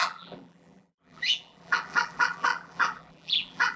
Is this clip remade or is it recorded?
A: remade